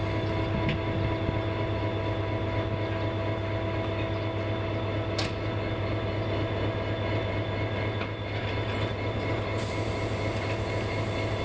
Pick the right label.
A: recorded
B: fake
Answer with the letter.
A